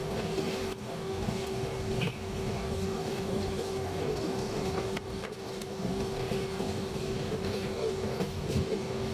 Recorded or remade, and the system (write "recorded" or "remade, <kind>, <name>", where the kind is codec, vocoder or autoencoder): remade, codec, DAC